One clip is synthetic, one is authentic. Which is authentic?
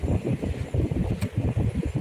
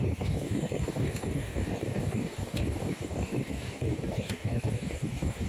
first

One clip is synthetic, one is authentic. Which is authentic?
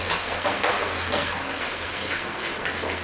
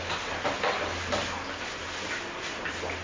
second